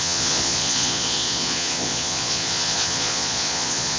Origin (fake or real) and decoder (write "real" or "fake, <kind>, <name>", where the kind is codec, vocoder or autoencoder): fake, vocoder, Vocos